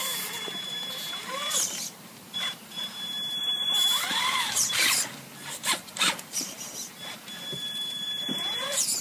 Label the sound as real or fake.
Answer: fake